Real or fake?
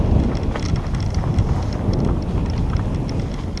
real